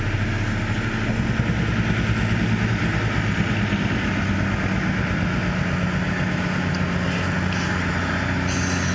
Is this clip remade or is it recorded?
recorded